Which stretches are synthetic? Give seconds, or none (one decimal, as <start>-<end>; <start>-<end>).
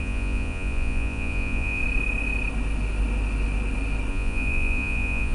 0.0-1.8; 4.1-5.3